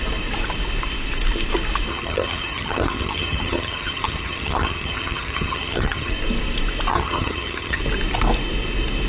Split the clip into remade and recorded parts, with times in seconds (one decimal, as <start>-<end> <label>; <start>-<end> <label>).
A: 0.0-1.9 recorded; 1.9-6.1 remade; 6.1-6.9 recorded; 6.9-7.8 remade; 7.8-9.1 recorded